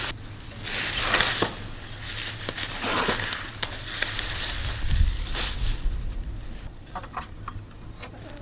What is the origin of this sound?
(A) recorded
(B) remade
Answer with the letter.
A